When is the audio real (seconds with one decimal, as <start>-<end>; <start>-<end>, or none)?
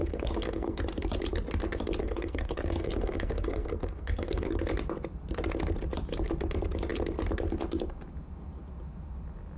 0.8-2.0; 4.6-9.6